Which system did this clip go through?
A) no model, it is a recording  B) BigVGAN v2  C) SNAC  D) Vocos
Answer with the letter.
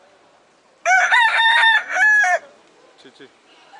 A